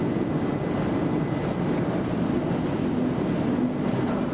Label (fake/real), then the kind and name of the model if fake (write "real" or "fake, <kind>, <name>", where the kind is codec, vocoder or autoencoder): real